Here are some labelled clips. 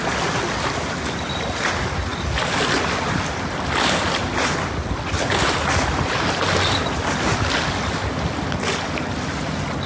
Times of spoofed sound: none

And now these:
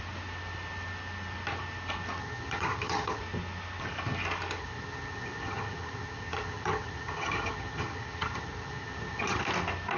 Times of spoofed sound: 2.2-3.2; 4.6-9.4

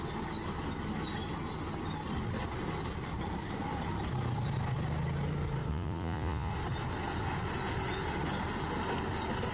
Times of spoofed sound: 5.7-6.5

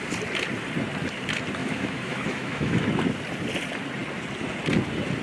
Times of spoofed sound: 1.6-2.8

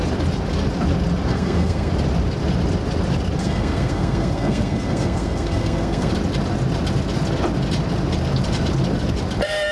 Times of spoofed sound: 1.3-1.9; 3.4-6.1

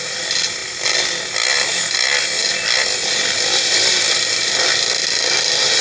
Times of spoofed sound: none